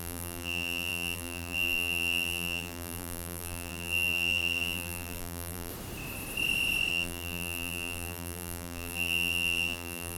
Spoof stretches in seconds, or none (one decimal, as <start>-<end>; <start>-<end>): 0.0-5.7; 6.9-10.2